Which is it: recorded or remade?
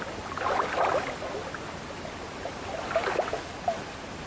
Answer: recorded